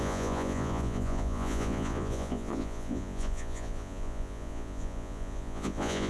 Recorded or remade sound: remade